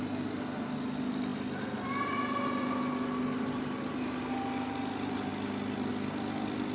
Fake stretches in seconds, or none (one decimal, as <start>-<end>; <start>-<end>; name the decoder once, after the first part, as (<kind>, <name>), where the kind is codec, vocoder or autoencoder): none